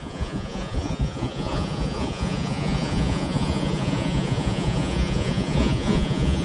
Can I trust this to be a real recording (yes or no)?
no